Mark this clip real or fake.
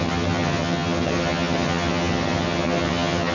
fake